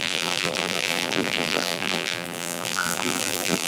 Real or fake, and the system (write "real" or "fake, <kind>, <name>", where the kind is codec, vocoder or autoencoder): fake, vocoder, BigVGAN v2